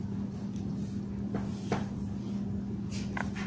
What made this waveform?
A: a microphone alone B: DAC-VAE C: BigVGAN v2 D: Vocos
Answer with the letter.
A